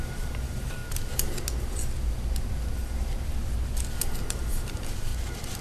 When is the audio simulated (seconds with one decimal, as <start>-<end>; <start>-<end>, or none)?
0.0-0.8; 4.2-5.1